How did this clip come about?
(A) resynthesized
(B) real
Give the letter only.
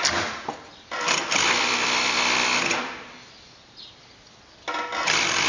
B